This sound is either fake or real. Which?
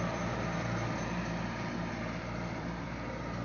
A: fake